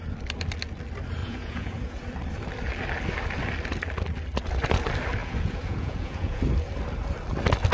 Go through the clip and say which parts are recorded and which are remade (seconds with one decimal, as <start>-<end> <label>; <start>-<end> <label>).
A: 0.0-1.2 recorded; 1.2-2.0 remade; 2.0-5.2 recorded; 5.2-6.4 remade; 6.4-7.7 recorded